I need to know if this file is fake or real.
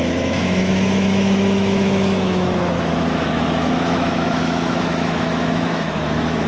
fake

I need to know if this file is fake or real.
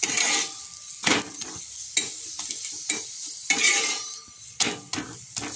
real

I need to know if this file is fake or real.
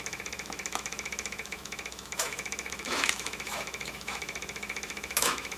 fake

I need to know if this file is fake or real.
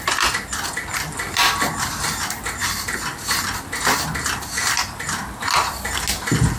real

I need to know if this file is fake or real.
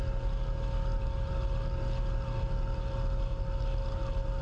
real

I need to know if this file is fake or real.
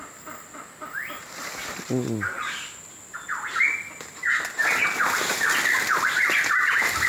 real